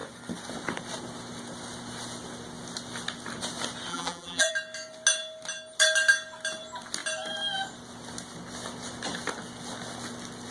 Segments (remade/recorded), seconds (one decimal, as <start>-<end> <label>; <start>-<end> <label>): 0.0-3.9 recorded; 3.9-4.5 remade; 4.5-10.5 recorded